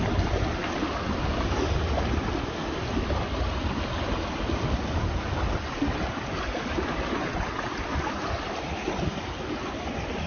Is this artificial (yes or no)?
no